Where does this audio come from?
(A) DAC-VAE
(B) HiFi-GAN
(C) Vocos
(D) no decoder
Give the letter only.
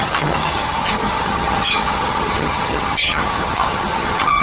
B